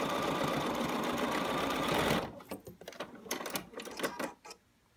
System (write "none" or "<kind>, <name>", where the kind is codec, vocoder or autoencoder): none